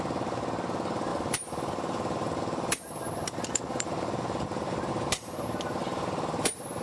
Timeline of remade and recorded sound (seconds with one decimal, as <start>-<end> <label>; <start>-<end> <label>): 0.0-1.1 recorded; 1.1-4.9 remade; 4.9-5.8 recorded; 5.8-6.8 remade